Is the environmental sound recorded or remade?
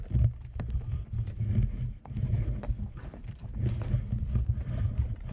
recorded